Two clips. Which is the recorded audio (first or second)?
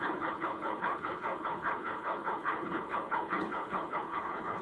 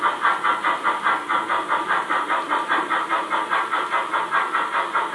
second